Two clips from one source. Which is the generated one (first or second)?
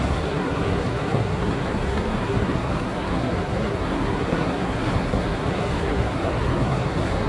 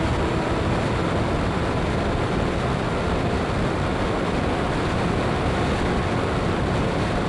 first